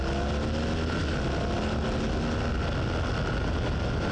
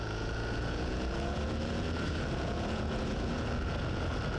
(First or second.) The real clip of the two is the first